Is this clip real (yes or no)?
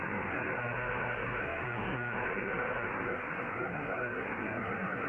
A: no